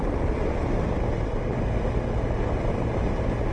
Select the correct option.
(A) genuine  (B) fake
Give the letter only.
A